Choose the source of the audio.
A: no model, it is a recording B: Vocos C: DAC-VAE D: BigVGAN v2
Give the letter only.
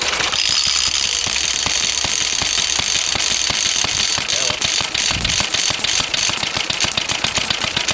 A